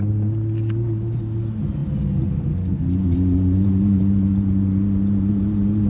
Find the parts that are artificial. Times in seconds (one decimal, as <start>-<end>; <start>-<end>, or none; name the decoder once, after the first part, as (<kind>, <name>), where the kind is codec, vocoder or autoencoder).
none